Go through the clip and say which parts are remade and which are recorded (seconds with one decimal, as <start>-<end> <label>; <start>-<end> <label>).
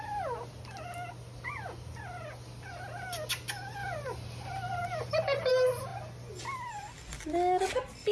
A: 0.0-3.8 recorded; 3.8-5.5 remade; 5.5-8.1 recorded